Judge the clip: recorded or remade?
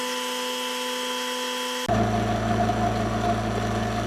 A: recorded